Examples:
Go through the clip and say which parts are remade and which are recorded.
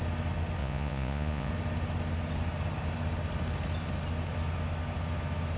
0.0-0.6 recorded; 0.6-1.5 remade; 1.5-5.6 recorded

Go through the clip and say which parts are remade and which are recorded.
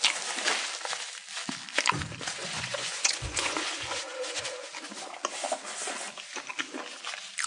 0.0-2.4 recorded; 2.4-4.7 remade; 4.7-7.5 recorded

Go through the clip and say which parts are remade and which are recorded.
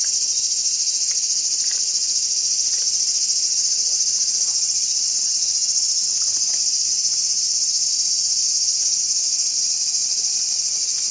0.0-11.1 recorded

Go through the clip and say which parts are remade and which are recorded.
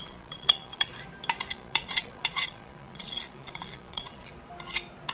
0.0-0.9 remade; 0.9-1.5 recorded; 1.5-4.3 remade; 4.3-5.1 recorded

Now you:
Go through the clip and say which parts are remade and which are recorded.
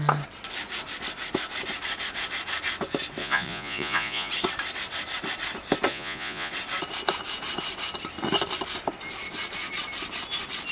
0.0-3.2 recorded; 3.2-4.3 remade; 4.3-5.9 recorded; 5.9-6.5 remade; 6.5-10.7 recorded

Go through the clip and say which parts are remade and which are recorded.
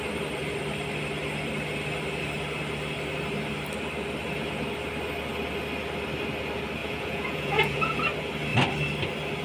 0.0-6.8 recorded; 6.8-8.0 remade; 8.0-9.4 recorded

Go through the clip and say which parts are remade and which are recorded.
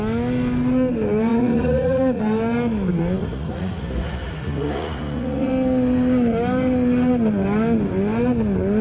0.0-1.3 recorded; 1.3-2.2 remade; 2.2-3.2 recorded; 3.2-5.5 remade; 5.5-8.8 recorded